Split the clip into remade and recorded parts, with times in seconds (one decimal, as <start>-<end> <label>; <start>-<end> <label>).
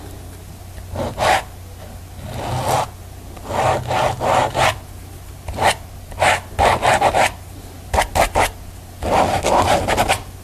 0.0-10.4 recorded